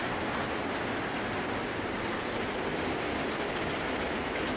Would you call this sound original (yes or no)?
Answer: yes